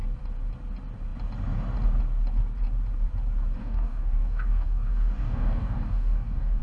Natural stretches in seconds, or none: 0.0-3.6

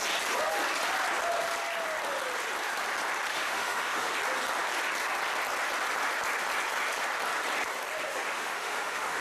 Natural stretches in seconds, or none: 0.0-3.3; 4.1-8.1